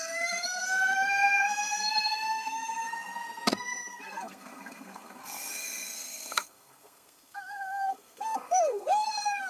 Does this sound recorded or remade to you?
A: remade